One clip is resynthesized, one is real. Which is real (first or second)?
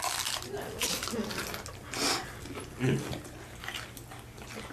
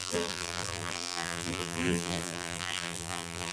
first